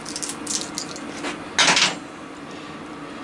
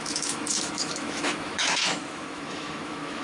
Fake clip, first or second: second